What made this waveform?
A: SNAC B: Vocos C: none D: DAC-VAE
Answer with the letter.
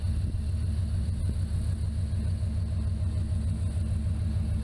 C